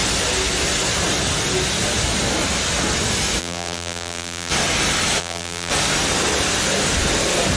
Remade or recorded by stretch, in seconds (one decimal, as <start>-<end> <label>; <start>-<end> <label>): 0.0-3.4 recorded; 3.4-4.5 remade; 4.5-5.2 recorded; 5.2-5.7 remade; 5.7-7.6 recorded